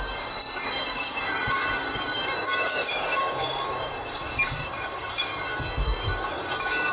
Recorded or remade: remade